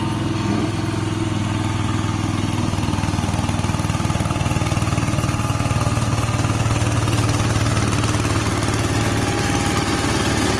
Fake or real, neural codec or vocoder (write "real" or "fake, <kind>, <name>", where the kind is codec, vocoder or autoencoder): real